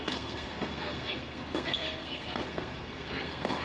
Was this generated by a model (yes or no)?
yes